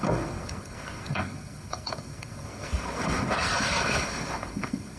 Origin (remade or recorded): remade